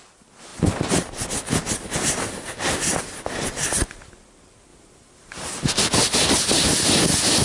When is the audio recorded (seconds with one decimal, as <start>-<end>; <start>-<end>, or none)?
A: 0.0-7.4